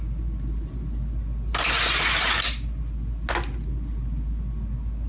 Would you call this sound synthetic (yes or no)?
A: no